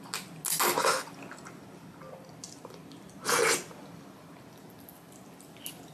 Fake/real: real